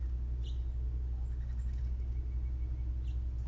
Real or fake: real